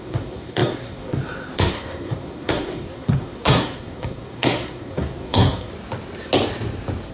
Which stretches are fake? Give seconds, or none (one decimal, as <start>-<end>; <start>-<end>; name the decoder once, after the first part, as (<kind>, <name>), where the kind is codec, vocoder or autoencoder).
0.0-5.7 (codec, SNAC)